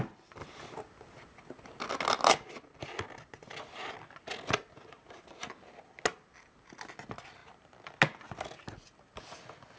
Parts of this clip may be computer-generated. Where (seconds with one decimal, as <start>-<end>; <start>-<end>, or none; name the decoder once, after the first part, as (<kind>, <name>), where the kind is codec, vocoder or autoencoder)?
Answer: none

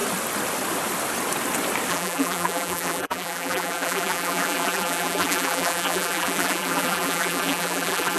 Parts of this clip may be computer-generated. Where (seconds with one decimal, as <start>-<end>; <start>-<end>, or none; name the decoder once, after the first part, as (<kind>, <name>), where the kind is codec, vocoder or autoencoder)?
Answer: 1.9-8.2 (vocoder, BigVGAN v2)

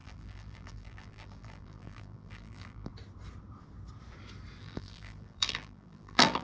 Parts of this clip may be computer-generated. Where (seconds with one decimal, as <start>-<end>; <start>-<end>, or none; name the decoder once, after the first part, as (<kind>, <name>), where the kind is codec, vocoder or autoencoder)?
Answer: 0.0-2.9 (vocoder, BigVGAN v2); 4.6-6.4

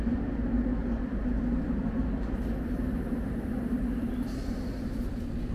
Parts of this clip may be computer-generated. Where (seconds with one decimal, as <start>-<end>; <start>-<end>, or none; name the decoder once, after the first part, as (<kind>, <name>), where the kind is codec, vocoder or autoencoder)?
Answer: 0.8-4.1 (vocoder, BigVGAN v2)